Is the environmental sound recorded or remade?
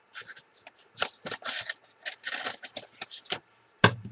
recorded